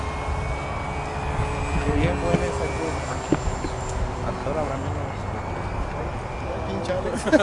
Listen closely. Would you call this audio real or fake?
real